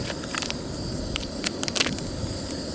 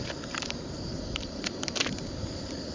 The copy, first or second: second